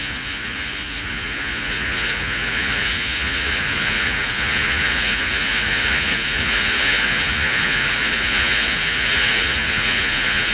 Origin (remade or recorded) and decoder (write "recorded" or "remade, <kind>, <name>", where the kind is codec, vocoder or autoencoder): remade, vocoder, Vocos